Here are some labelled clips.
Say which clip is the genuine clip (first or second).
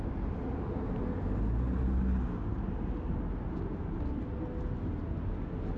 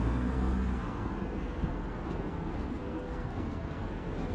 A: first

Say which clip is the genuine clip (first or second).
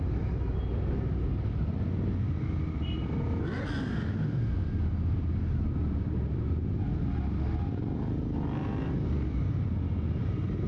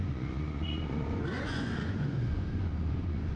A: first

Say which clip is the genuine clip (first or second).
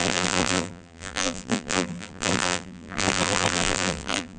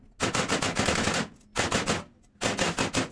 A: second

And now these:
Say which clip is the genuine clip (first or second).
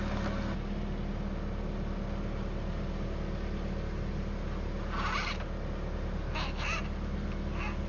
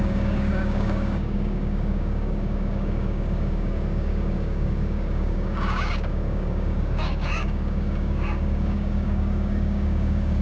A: first